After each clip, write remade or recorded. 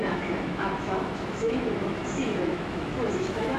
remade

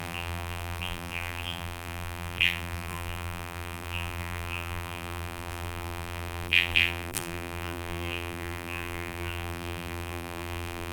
remade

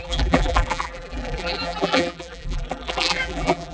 remade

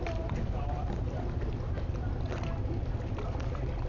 recorded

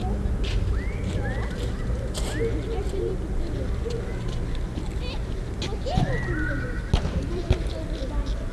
recorded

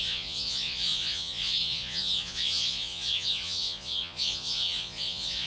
remade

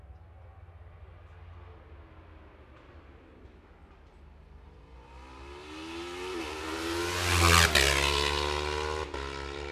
recorded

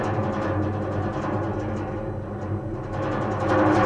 recorded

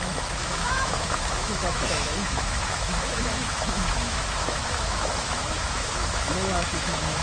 remade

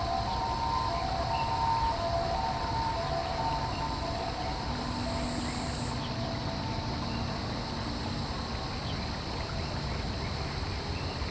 recorded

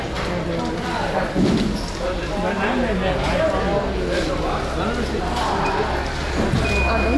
recorded